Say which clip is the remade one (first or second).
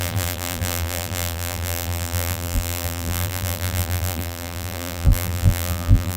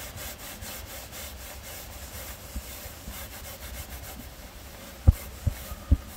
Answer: first